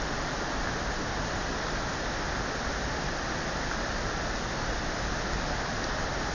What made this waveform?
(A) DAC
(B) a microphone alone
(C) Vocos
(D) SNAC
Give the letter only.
B